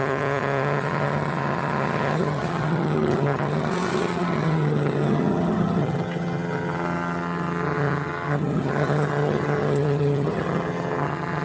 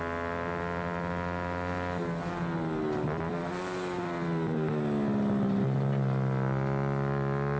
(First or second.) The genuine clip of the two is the second